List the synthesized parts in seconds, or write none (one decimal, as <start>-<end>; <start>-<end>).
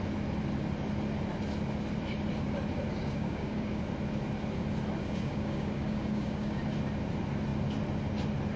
3.0-3.8; 5.0-6.6